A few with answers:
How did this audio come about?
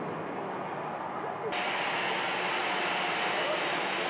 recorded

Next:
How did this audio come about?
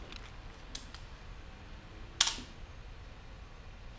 recorded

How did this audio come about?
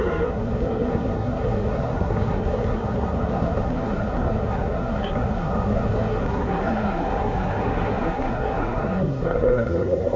remade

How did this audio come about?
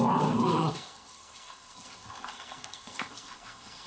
remade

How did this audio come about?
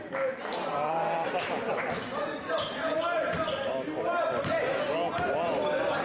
recorded